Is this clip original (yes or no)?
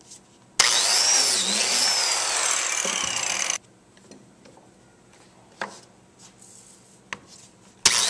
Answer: yes